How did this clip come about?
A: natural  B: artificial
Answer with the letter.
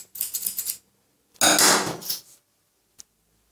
A